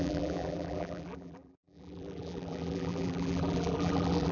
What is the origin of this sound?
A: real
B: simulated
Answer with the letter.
B